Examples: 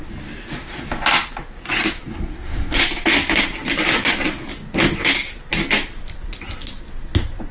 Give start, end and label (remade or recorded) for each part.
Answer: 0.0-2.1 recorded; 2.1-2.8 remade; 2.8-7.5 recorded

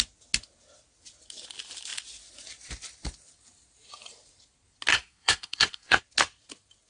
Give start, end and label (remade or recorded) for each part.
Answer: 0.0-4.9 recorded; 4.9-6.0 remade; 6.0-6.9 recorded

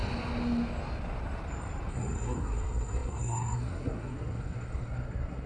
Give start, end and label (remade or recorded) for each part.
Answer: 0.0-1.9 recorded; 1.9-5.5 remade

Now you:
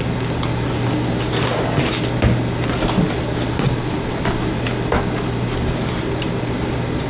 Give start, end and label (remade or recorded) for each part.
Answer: 0.0-7.1 recorded

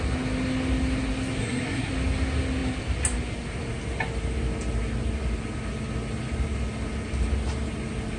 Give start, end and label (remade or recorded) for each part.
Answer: 0.0-1.4 recorded; 1.4-1.9 remade; 1.9-8.2 recorded

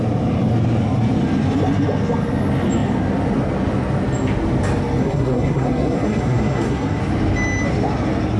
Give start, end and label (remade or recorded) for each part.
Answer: 0.0-5.0 recorded; 5.0-7.0 remade; 7.0-8.4 recorded

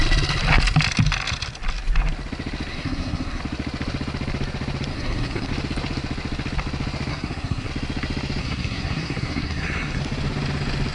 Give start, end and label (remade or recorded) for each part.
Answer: 0.0-2.7 recorded; 2.7-3.4 remade; 3.4-4.9 recorded; 4.9-5.5 remade; 5.5-7.1 recorded; 7.1-7.7 remade; 7.7-8.4 recorded; 8.4-10.0 remade; 10.0-10.9 recorded